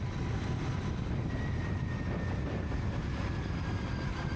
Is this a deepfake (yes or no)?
no